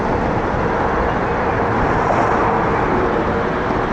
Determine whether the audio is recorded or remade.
recorded